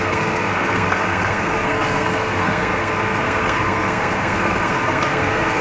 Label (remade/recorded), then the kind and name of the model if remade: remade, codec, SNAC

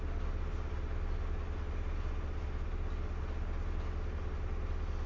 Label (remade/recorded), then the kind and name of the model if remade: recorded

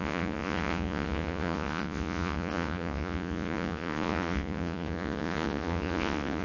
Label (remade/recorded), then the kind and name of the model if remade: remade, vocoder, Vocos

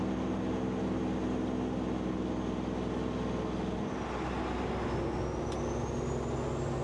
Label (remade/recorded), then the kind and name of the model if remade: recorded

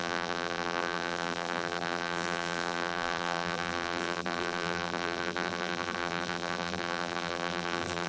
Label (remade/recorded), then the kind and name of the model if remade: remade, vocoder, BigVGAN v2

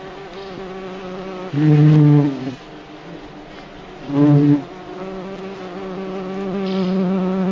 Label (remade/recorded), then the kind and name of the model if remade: recorded